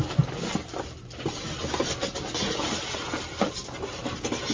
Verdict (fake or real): real